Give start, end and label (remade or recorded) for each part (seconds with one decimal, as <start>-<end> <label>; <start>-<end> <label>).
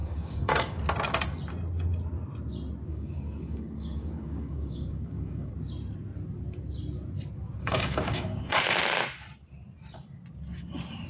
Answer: 0.0-0.8 remade; 0.8-2.9 recorded; 2.9-5.5 remade; 5.5-7.6 recorded; 7.6-8.6 remade; 8.6-11.1 recorded